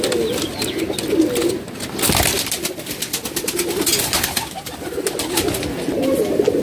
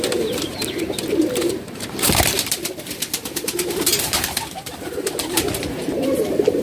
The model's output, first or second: second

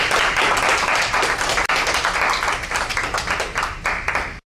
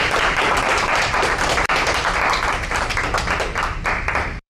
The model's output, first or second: second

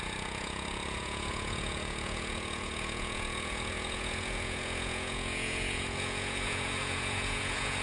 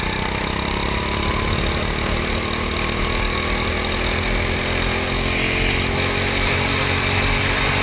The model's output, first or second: first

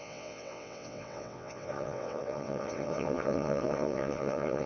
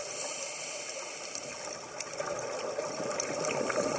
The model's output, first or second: first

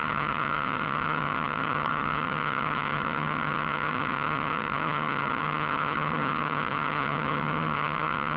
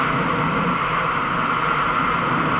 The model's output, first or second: first